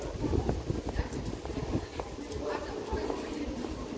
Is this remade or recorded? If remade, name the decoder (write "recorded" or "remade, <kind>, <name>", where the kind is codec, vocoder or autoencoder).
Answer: recorded